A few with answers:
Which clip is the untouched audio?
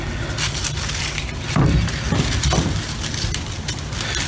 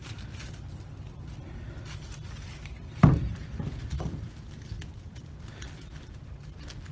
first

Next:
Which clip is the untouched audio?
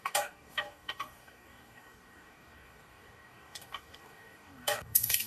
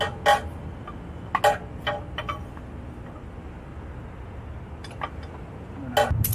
second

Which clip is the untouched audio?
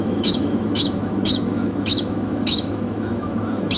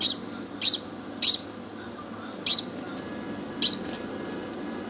second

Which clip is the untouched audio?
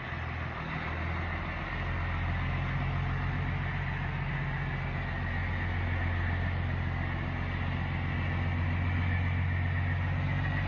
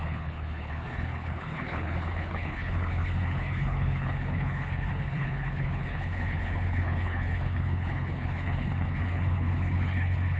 first